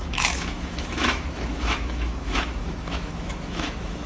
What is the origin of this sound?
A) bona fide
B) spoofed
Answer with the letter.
B